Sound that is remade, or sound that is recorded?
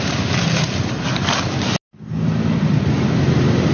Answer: recorded